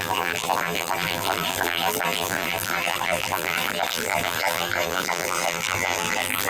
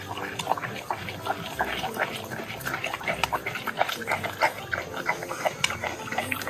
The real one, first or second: second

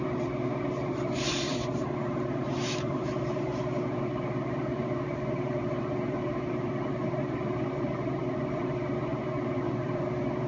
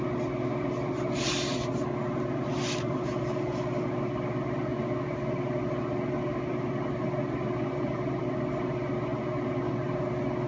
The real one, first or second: second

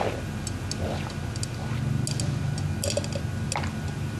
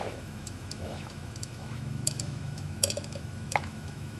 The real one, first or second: first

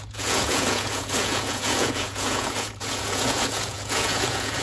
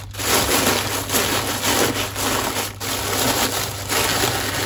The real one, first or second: second